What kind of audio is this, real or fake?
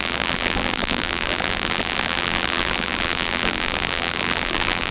fake